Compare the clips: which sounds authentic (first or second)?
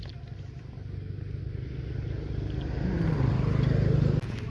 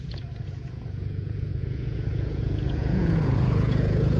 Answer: first